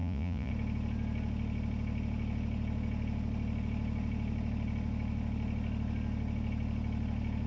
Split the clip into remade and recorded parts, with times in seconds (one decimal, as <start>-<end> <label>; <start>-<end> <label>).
0.0-0.5 remade; 0.5-7.5 recorded